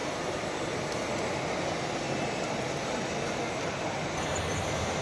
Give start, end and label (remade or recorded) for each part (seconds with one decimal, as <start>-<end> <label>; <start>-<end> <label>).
0.0-5.0 recorded